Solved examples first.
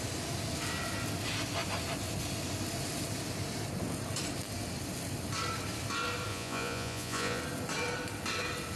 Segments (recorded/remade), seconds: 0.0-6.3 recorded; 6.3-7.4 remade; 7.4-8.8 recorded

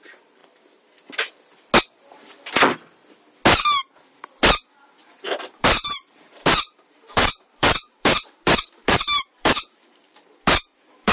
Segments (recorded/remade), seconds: 0.0-0.4 remade; 0.4-5.4 recorded; 5.4-11.1 remade

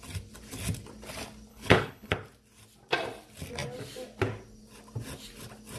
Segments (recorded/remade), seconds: 0.0-1.5 recorded; 1.5-2.1 remade; 2.1-5.8 recorded